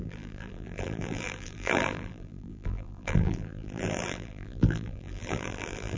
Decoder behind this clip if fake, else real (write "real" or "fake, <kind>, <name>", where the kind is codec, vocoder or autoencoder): fake, vocoder, BigVGAN v2